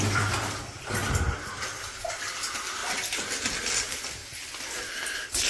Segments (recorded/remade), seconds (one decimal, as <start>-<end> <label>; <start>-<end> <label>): 0.0-2.8 remade; 2.8-3.8 recorded; 3.8-4.2 remade; 4.2-4.8 recorded; 4.8-5.5 remade